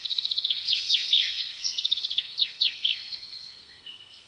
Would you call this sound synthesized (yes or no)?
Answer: yes